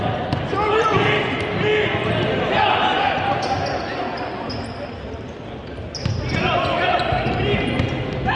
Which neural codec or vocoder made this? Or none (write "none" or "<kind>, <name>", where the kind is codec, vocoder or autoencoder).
none